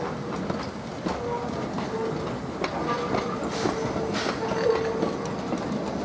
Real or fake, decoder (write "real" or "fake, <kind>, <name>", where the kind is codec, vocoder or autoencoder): real